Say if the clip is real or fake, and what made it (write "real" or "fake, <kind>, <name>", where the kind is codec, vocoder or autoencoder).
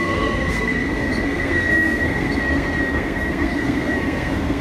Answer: fake, codec, SNAC